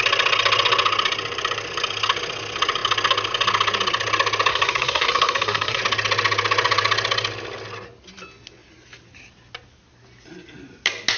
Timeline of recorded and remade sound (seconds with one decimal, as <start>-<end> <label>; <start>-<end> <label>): 0.0-4.5 recorded; 4.5-5.8 remade; 5.8-11.2 recorded